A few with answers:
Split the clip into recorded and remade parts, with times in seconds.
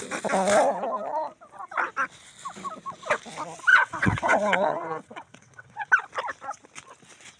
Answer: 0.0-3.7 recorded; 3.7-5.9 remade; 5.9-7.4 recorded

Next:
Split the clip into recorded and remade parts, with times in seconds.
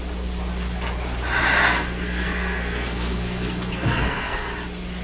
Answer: 0.0-1.6 recorded; 1.6-4.5 remade; 4.5-5.0 recorded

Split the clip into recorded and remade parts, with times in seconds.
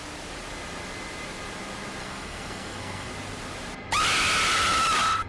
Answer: 0.0-2.0 recorded; 2.0-3.1 remade; 3.1-5.3 recorded